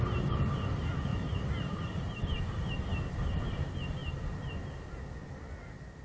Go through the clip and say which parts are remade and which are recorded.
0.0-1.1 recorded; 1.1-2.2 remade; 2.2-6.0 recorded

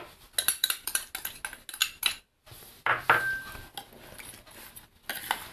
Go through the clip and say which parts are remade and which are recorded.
0.0-0.5 recorded; 0.5-1.1 remade; 1.1-5.5 recorded

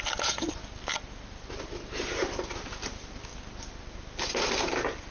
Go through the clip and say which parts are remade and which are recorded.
0.0-3.3 remade; 3.3-5.1 recorded